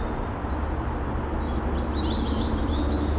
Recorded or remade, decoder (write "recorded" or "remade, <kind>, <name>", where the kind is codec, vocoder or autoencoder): recorded